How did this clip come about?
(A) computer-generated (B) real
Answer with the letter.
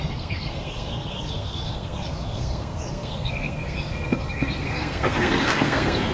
A